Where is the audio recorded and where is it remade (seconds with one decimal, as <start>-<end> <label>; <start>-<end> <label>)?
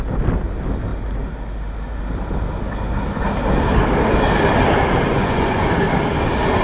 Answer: 0.0-5.1 recorded; 5.1-5.7 remade; 5.7-6.6 recorded